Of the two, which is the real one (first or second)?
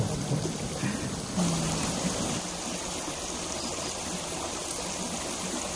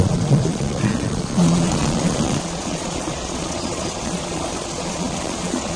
first